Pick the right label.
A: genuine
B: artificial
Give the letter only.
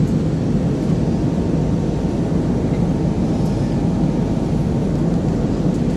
A